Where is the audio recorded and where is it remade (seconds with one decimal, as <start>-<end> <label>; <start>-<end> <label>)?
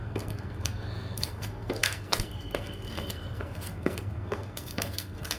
0.0-5.4 remade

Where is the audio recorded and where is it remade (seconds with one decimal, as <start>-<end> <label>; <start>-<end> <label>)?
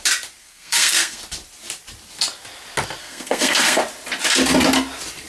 0.0-0.4 recorded; 0.4-1.2 remade; 1.2-3.0 recorded; 3.0-3.8 remade; 3.8-5.3 recorded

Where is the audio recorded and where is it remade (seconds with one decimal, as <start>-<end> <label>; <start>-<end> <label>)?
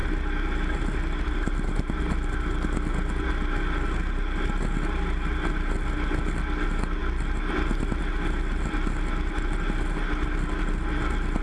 0.0-11.4 recorded